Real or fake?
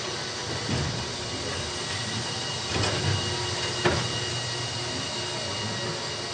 real